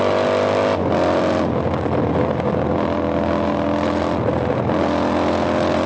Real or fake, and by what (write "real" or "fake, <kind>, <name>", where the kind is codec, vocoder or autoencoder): real